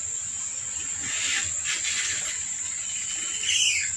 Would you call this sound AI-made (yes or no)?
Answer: no